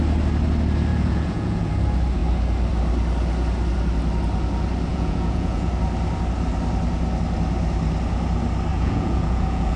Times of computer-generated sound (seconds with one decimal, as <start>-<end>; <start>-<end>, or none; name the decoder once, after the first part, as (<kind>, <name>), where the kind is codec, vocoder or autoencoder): 0.9-1.7 (vocoder, Vocos); 4.9-5.7; 8.7-9.8